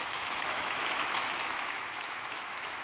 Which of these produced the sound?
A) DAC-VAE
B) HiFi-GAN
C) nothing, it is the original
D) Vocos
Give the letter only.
A